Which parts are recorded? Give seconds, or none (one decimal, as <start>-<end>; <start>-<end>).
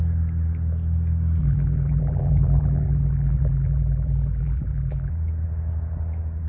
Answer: 0.0-1.4; 5.1-6.5